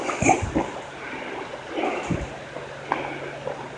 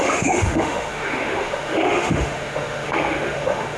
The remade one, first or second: second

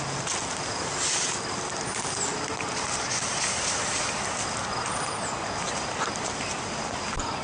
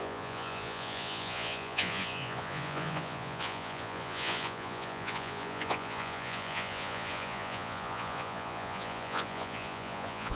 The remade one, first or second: second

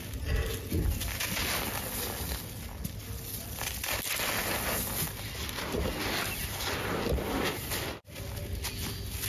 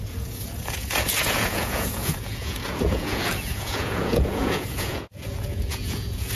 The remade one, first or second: second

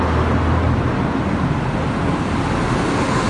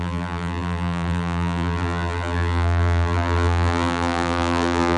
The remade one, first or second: second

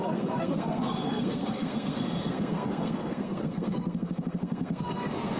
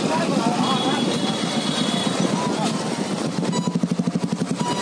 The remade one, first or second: first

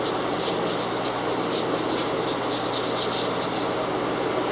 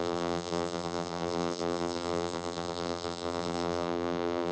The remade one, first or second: second